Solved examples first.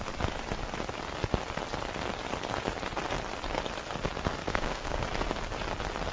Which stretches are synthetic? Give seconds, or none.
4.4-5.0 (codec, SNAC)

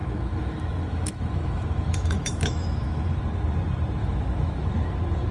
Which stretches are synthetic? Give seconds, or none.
0.0-3.2 (autoencoder, DAC-VAE); 4.0-4.7

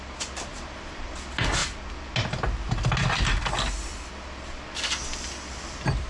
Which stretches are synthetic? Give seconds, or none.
0.0-1.6 (vocoder, BigVGAN v2); 4.9-6.1

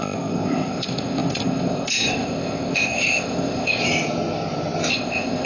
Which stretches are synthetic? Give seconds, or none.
0.0-3.8 (codec, ZipCodec); 4.9-5.5

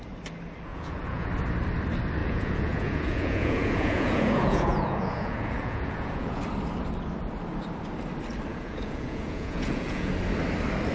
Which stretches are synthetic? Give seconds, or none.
0.7-1.3 (vocoder, Vocos); 2.2-6.4; 8.5-10.1

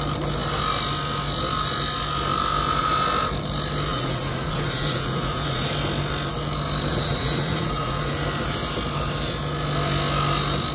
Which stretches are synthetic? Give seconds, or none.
3.9-5.7 (vocoder, Vocos); 6.9-8.1